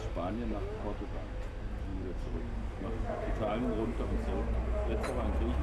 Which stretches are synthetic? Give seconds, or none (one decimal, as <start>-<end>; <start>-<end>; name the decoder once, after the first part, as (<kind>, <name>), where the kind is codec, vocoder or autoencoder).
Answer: none